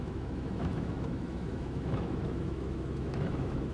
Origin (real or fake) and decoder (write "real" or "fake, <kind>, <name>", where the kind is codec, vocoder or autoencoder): fake, autoencoder, DAC-VAE